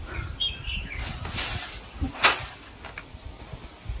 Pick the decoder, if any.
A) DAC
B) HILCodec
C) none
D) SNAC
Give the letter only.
C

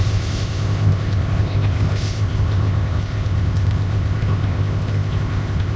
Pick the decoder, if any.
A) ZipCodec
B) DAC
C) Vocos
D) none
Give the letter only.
A